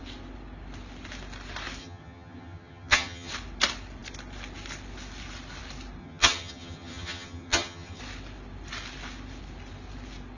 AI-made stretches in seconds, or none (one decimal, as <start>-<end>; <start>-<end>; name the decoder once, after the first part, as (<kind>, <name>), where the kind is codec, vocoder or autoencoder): 1.8-3.3 (vocoder, HiFi-GAN); 6.0-8.0